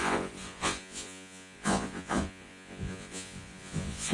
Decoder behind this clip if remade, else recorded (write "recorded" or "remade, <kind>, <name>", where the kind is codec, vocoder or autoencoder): remade, vocoder, Vocos